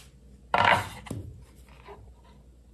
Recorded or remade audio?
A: recorded